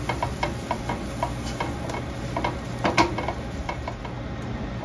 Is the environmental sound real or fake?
real